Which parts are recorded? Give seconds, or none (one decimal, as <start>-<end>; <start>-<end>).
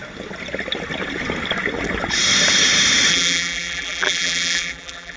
0.0-3.1